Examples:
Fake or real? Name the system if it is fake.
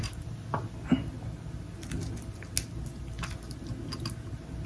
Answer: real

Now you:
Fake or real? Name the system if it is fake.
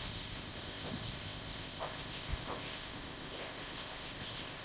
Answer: fake, codec, ZipCodec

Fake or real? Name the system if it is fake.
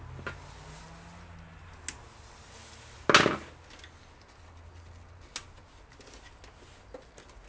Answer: real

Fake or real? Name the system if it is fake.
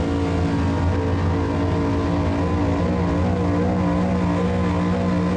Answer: real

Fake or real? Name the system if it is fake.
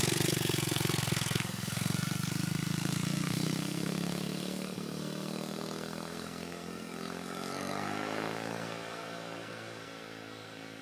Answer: fake, codec, SNAC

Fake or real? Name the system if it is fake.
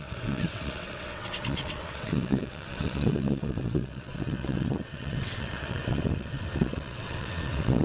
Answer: fake, vocoder, WaveNeXt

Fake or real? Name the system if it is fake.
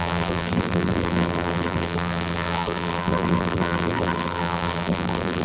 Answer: fake, vocoder, BigVGAN v2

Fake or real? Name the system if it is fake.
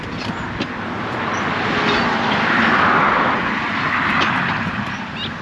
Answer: real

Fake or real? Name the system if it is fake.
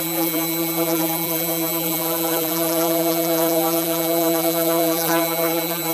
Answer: fake, vocoder, BigVGAN v2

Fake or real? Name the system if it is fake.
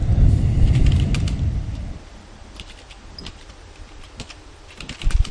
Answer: fake, vocoder, BigVGAN v2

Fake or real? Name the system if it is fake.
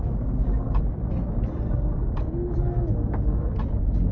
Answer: real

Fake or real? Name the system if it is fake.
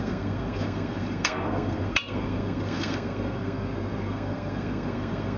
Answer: fake, codec, SNAC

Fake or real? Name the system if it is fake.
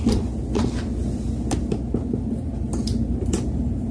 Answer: real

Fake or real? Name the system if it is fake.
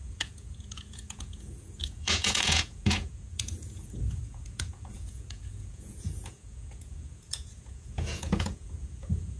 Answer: fake, vocoder, Vocos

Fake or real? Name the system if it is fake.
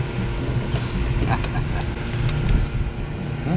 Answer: real